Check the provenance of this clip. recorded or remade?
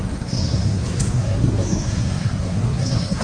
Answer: remade